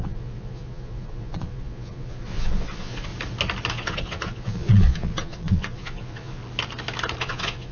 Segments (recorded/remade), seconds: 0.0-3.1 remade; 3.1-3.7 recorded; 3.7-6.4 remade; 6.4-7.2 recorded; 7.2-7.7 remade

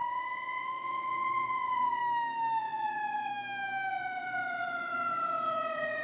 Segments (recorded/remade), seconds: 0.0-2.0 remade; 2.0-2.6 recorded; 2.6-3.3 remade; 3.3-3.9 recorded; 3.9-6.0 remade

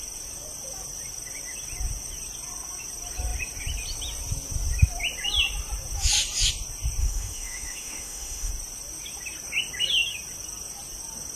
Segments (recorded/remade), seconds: 0.0-7.0 recorded; 7.0-8.5 remade; 8.5-11.4 recorded

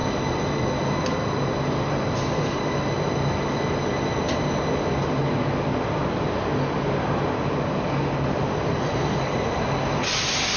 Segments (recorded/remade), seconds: 0.0-10.6 recorded

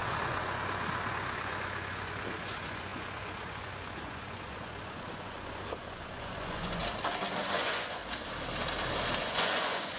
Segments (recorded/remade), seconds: 0.0-6.8 remade; 6.8-7.4 recorded; 7.4-8.0 remade; 8.0-9.2 recorded; 9.2-10.0 remade

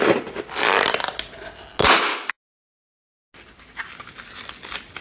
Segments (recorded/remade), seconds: 0.0-5.0 recorded

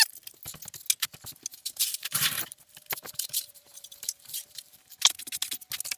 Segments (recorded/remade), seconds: 0.0-1.5 recorded; 1.5-5.1 remade; 5.1-6.0 recorded